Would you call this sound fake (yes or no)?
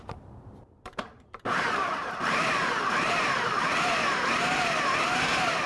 yes